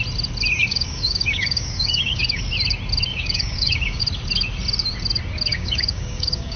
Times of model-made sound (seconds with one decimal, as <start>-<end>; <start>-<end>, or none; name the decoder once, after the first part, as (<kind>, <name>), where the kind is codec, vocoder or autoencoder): 0.7-2.4 (codec, DAC); 3.1-4.0; 5.5-6.6